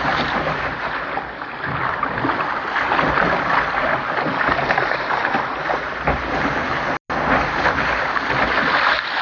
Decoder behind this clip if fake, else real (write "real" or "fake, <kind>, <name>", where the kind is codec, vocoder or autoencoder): real